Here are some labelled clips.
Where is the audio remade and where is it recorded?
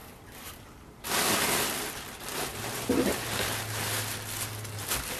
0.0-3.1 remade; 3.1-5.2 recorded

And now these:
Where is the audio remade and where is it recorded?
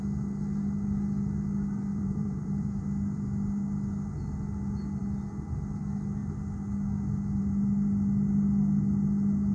0.0-1.9 recorded; 1.9-2.8 remade; 2.8-9.5 recorded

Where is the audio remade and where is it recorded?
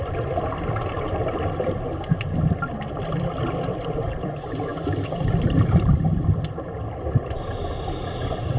0.0-4.7 recorded; 4.7-7.7 remade; 7.7-8.6 recorded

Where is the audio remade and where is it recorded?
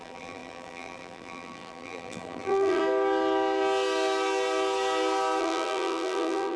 0.0-2.8 remade; 2.8-5.4 recorded; 5.4-6.6 remade